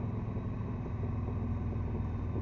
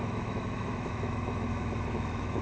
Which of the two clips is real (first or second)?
first